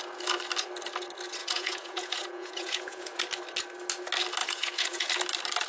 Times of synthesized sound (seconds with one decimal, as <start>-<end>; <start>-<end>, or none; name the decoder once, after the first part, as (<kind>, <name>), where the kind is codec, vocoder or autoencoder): 1.4-3.2 (vocoder, Vocos); 4.4-5.1